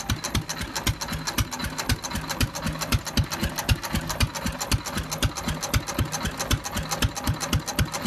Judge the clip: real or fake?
real